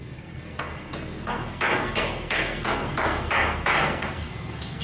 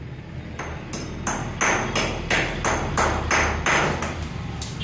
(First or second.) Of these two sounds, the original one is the second